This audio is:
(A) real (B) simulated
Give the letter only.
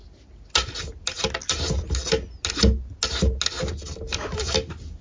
A